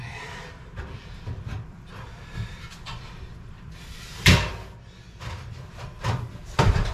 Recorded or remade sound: remade